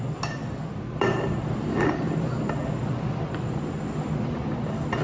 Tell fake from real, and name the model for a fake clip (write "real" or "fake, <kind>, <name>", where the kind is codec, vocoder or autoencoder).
real